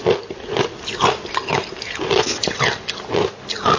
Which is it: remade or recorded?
recorded